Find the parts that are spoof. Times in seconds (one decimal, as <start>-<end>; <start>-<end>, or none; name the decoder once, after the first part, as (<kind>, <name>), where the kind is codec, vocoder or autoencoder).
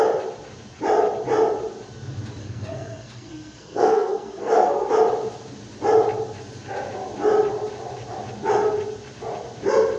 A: 2.4-4.9 (codec, SNAC)